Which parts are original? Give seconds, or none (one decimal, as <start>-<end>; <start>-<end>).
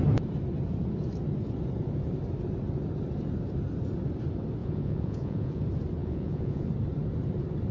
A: 0.0-4.6; 5.6-6.0; 6.7-7.7